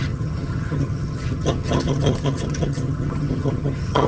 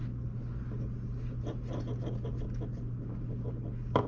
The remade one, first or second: first